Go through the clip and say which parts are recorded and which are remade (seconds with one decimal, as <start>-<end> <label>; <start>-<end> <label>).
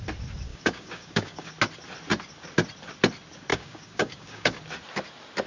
0.0-0.5 recorded; 0.5-1.5 remade; 1.5-3.5 recorded; 3.5-4.6 remade; 4.6-5.5 recorded